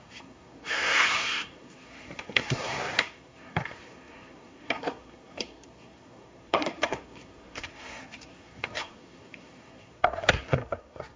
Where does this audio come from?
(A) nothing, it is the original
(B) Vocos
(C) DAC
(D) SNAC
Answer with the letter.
D